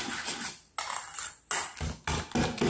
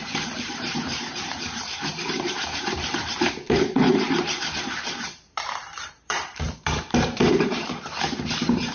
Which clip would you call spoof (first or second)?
second